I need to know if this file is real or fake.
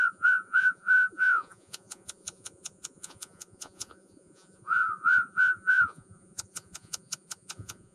fake